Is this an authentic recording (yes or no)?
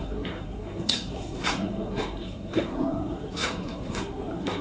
no